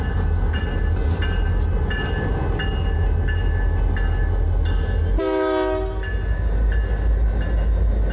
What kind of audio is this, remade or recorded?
recorded